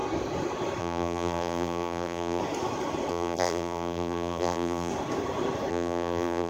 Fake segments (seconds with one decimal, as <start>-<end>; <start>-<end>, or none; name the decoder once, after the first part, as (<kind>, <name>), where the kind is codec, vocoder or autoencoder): 0.8-2.4 (vocoder, BigVGAN v2); 3.1-4.9; 5.7-6.5